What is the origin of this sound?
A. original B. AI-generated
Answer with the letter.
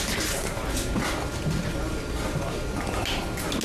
A